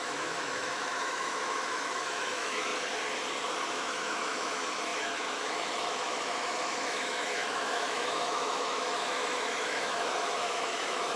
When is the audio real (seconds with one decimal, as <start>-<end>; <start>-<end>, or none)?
2.7-3.7